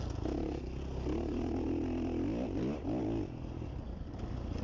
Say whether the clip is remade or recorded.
recorded